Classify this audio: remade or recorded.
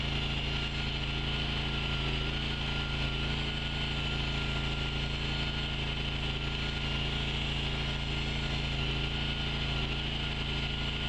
recorded